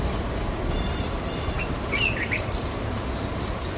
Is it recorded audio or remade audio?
recorded